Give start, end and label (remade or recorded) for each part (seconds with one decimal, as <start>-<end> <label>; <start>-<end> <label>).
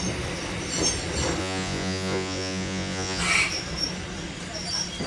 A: 0.0-1.4 recorded; 1.4-3.2 remade; 3.2-5.1 recorded